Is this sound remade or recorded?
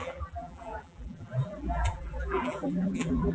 remade